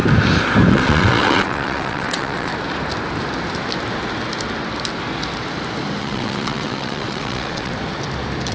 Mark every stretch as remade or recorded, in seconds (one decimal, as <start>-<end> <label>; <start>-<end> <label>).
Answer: 0.0-0.7 recorded; 0.7-2.5 remade; 2.5-6.0 recorded; 6.0-7.7 remade; 7.7-8.5 recorded